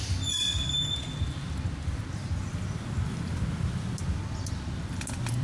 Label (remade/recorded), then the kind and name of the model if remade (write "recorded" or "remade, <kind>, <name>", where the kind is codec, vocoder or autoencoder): recorded